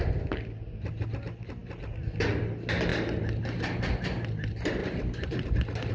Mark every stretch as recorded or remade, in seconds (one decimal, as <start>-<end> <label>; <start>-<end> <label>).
0.0-5.9 recorded

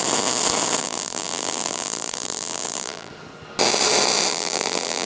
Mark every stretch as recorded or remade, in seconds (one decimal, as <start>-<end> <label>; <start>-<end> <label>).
0.0-0.8 recorded; 0.8-3.1 remade; 3.1-4.3 recorded; 4.3-5.1 remade

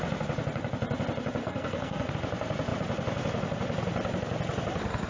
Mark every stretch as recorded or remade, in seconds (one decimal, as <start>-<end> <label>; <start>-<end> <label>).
0.0-1.4 recorded; 1.4-2.1 remade; 2.1-5.1 recorded

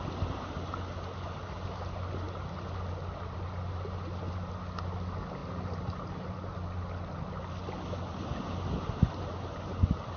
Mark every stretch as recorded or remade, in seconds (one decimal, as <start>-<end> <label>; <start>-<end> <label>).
0.0-10.2 recorded

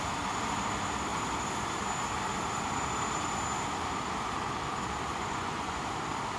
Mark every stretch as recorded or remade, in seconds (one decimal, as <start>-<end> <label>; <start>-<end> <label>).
0.0-5.1 recorded; 5.1-5.8 remade; 5.8-6.4 recorded

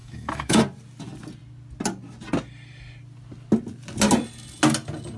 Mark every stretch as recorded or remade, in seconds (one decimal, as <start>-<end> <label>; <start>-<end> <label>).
0.0-0.6 remade; 0.6-5.2 recorded

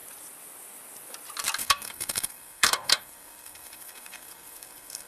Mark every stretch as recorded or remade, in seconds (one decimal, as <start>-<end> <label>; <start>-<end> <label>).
0.0-1.6 recorded; 1.6-5.1 remade

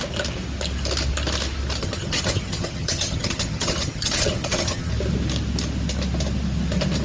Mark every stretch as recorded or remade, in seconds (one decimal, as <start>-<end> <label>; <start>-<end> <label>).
0.0-1.8 recorded; 1.8-4.9 remade; 4.9-7.0 recorded